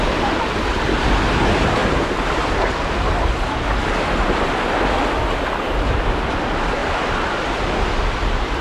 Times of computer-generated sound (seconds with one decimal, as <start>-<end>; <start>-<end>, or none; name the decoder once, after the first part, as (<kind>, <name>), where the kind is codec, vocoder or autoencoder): none